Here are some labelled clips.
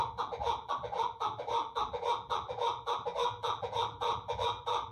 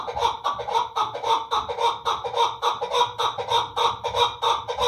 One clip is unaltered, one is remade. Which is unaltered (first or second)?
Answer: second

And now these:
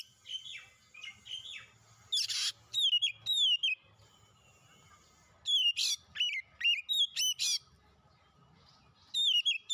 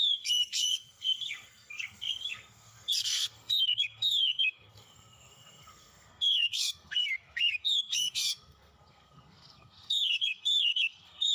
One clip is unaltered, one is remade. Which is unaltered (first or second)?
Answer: first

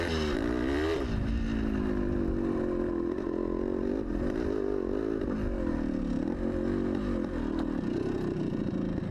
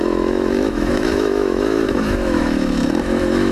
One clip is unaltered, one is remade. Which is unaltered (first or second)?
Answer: first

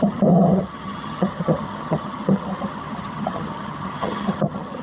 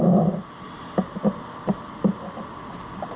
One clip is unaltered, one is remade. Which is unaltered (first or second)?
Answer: second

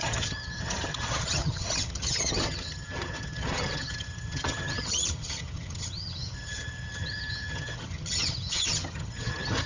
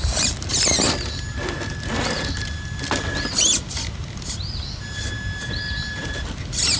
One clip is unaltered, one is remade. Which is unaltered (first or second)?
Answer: second